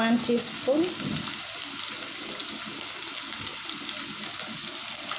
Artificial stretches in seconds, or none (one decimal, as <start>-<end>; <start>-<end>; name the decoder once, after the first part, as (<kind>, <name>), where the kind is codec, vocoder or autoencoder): none